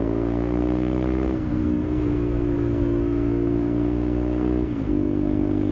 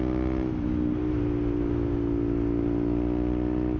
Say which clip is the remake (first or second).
first